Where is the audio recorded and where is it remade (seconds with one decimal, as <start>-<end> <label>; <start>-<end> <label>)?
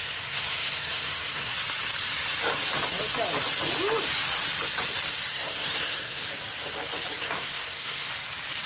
0.0-1.5 remade; 1.5-5.3 recorded; 5.3-6.2 remade; 6.2-7.2 recorded; 7.2-8.1 remade; 8.1-8.7 recorded